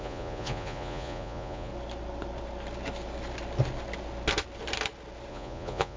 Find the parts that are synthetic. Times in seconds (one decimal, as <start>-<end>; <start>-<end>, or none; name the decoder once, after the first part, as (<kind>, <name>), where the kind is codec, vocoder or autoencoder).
0.0-1.7 (vocoder, Vocos); 5.3-6.0